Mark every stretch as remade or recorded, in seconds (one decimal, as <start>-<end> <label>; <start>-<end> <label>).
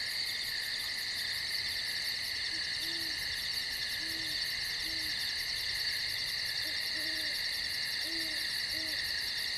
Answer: 0.0-9.6 recorded